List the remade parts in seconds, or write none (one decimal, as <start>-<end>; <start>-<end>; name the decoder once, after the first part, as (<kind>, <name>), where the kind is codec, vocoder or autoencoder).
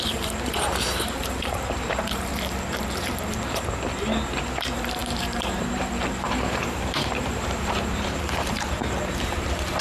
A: 0.0-2.3 (vocoder, BigVGAN v2); 4.4-9.8